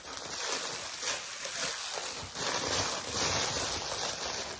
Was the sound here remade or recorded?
recorded